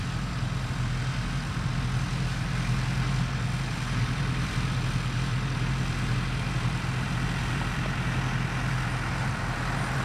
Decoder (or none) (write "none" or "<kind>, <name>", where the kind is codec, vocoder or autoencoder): vocoder, BigVGAN v2